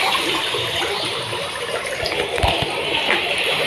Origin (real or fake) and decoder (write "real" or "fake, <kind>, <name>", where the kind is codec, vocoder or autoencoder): fake, vocoder, BigVGAN v2